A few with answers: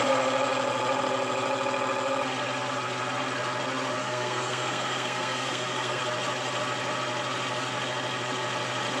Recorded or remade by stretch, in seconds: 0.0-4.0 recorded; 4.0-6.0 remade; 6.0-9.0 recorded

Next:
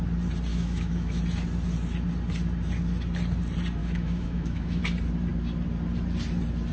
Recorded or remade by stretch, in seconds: 0.0-0.5 recorded; 0.5-1.2 remade; 1.2-3.8 recorded; 3.8-4.8 remade; 4.8-6.7 recorded

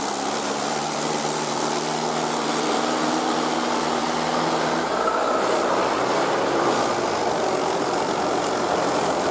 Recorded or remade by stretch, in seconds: 0.0-9.3 remade

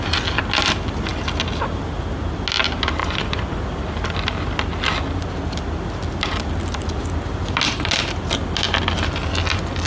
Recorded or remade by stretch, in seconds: 0.0-3.0 recorded; 3.0-3.6 remade; 3.6-9.9 recorded

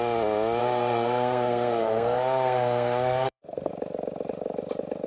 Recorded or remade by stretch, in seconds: 0.0-0.6 recorded; 0.6-3.7 remade; 3.7-5.1 recorded

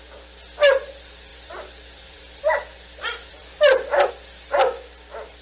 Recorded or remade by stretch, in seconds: 0.0-1.3 recorded; 1.3-4.1 remade; 4.1-5.4 recorded

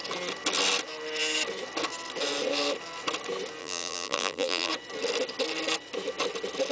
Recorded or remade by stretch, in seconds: 0.0-3.6 recorded; 3.6-4.7 remade; 4.7-6.7 recorded